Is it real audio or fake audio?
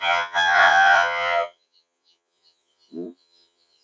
fake